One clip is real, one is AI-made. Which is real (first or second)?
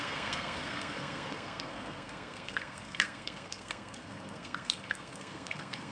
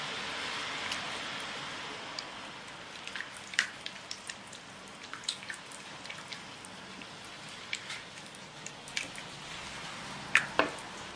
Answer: second